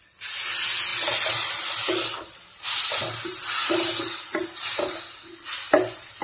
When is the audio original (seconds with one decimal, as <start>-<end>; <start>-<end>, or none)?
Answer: 0.0-6.2